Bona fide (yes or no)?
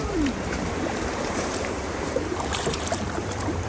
no